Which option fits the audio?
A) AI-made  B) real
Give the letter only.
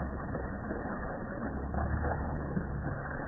A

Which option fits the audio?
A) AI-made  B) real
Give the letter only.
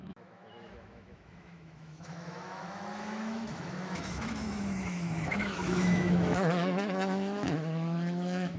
A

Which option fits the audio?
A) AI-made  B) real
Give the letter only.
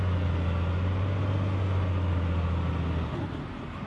B